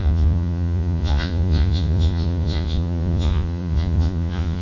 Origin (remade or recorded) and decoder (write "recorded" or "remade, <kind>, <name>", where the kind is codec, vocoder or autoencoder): remade, vocoder, Vocos